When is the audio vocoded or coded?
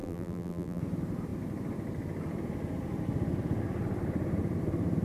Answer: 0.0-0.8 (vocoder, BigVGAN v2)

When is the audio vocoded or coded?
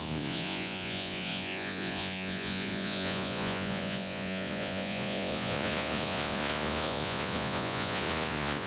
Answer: 0.0-8.7 (vocoder, Vocos)